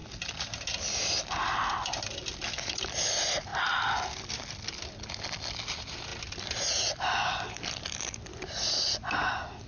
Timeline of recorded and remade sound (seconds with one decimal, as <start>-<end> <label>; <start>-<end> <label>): 0.0-9.7 recorded